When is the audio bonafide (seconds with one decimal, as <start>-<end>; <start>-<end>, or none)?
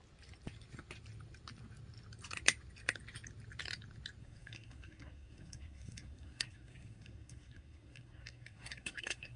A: 0.0-4.2